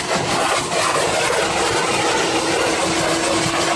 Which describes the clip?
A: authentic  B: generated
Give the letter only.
A